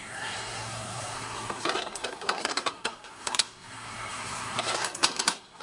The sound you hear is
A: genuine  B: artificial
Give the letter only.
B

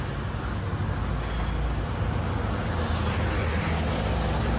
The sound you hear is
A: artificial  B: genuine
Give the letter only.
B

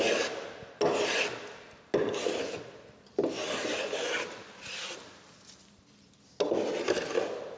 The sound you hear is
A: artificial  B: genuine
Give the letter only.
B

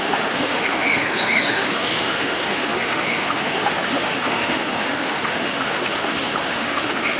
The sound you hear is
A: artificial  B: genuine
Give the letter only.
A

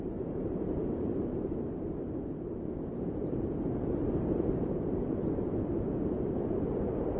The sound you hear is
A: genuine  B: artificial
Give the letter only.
B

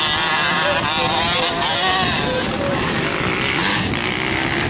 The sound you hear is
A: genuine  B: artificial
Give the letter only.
A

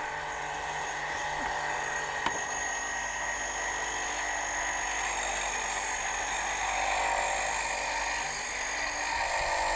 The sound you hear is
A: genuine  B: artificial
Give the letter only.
A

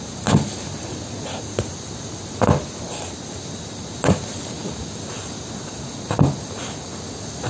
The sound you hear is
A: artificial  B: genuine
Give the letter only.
B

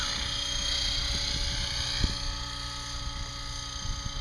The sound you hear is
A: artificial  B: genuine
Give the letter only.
B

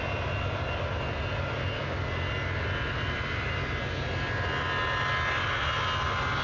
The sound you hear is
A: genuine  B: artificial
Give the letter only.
A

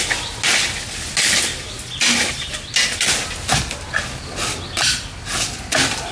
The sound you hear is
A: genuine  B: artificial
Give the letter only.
A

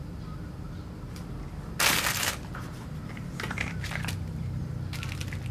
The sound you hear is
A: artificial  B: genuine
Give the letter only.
B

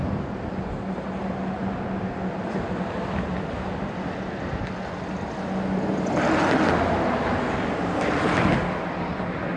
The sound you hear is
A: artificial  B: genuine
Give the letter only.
B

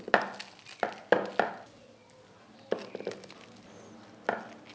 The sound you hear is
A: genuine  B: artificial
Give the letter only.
A